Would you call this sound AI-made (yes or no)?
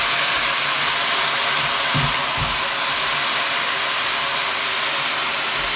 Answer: no